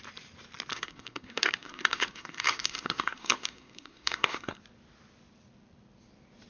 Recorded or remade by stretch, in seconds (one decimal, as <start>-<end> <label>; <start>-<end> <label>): 0.0-0.7 recorded; 0.7-4.6 remade; 4.6-6.5 recorded